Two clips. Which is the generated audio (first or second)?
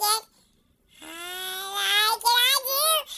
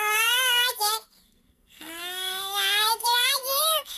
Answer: second